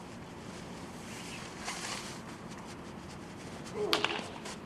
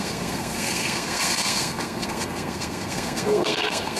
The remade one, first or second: second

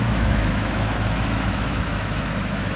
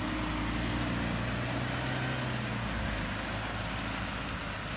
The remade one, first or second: first